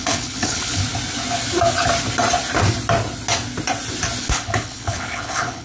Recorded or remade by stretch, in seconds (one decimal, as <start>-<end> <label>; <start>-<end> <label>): 0.0-0.8 remade; 0.8-4.2 recorded; 4.2-5.6 remade